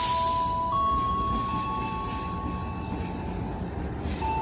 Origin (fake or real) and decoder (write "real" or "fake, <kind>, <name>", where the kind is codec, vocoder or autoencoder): real